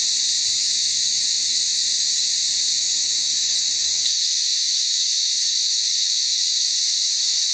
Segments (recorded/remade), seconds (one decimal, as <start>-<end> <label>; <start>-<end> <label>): 0.0-0.6 recorded; 0.6-2.2 remade; 2.2-2.7 recorded; 2.7-7.5 remade